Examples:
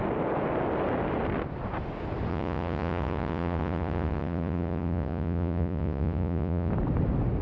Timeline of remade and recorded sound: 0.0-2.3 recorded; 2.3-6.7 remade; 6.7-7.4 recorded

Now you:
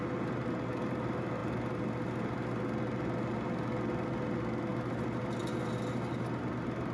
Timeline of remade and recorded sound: 0.0-6.9 recorded

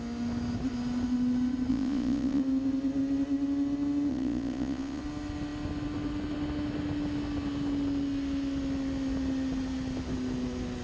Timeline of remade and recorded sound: 0.0-1.7 recorded; 1.7-2.4 remade; 2.4-4.1 recorded; 4.1-5.0 remade; 5.0-10.8 recorded

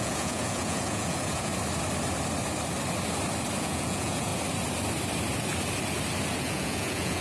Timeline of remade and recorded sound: 0.0-1.5 remade; 1.5-3.6 recorded; 3.6-4.3 remade; 4.3-6.4 recorded; 6.4-7.2 remade

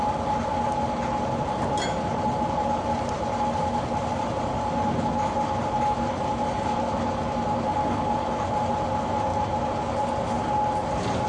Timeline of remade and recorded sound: 0.0-11.3 recorded

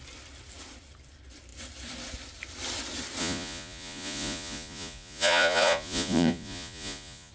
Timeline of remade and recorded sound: 0.0-3.2 recorded; 3.2-7.3 remade

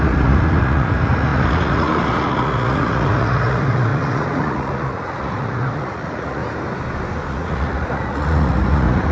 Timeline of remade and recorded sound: 0.0-6.4 remade; 6.4-7.3 recorded; 7.3-9.1 remade